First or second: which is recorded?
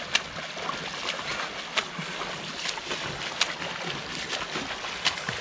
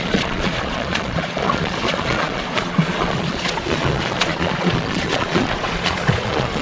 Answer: first